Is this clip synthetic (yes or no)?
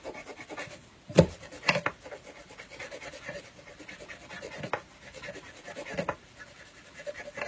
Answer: no